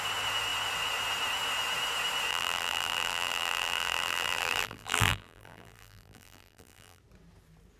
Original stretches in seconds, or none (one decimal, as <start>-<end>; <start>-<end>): 0.0-2.3; 7.0-7.8

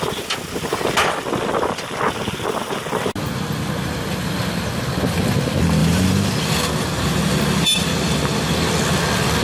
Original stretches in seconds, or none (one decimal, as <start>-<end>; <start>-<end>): 0.0-5.8; 6.4-9.4

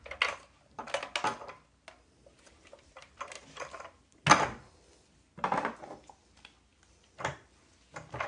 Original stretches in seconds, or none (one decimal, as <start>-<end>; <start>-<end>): 0.0-6.7; 7.6-8.3

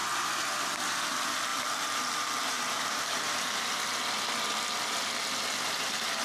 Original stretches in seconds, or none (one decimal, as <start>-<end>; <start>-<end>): 0.0-1.5; 3.6-6.2

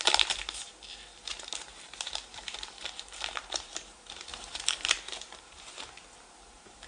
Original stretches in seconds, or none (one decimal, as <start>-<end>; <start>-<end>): 5.7-6.3

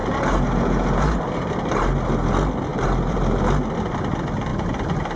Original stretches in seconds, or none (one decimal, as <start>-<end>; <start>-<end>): 1.2-2.7; 3.4-5.2